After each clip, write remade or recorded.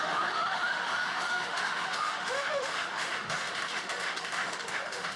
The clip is remade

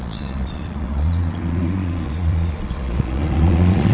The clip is remade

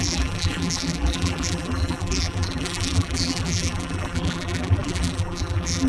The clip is remade